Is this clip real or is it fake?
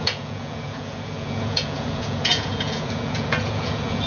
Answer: fake